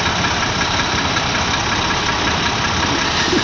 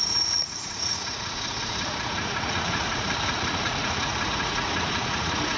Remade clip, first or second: second